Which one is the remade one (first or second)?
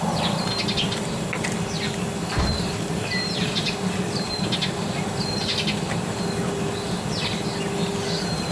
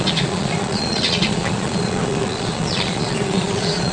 second